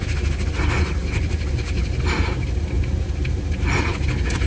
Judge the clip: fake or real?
real